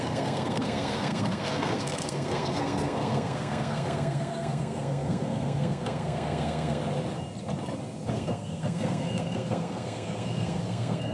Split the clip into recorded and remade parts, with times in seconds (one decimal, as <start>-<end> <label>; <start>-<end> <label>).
0.0-6.8 remade; 6.8-8.1 recorded; 8.1-11.1 remade